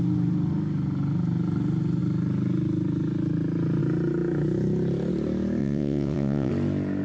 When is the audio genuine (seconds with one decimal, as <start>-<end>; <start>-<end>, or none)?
0.0-5.6; 6.5-7.0